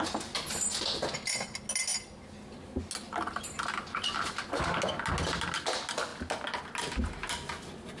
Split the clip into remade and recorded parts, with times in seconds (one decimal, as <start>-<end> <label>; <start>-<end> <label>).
0.0-8.0 recorded